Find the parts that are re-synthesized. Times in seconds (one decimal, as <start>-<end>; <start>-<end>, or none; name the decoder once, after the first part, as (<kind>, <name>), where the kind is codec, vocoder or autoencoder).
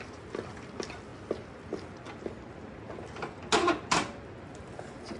0.0-5.2 (vocoder, BigVGAN v2)